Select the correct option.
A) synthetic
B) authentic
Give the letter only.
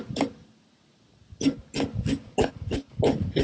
B